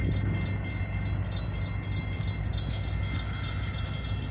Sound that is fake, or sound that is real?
real